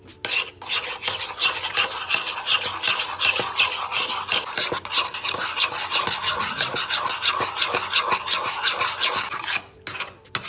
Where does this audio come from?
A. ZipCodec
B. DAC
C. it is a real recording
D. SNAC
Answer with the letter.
C